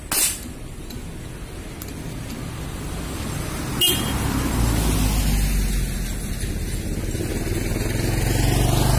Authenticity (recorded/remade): recorded